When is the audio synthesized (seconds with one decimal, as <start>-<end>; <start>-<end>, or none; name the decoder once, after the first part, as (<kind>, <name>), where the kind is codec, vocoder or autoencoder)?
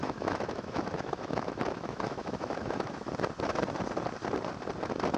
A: 0.0-3.1 (autoencoder, DAC-VAE)